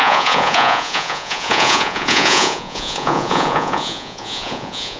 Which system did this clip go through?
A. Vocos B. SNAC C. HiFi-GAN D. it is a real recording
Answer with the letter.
A